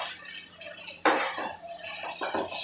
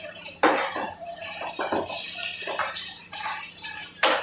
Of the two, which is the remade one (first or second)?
second